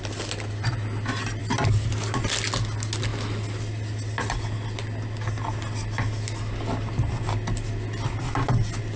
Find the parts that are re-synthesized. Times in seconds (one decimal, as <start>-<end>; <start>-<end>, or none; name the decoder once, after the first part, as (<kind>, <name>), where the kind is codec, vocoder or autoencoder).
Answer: none